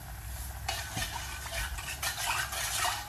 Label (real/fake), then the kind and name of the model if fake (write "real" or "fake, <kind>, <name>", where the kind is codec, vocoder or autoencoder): real